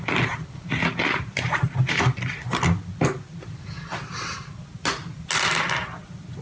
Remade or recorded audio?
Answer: recorded